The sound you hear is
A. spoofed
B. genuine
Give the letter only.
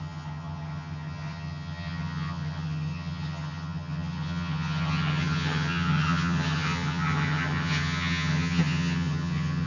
A